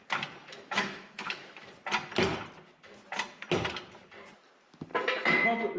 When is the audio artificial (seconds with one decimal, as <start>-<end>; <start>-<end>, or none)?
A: 0.4-1.7